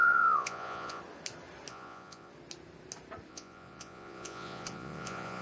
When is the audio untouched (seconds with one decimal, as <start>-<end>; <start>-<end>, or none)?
1.0-1.7; 2.3-3.3